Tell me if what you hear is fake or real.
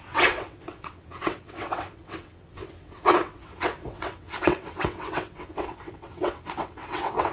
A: fake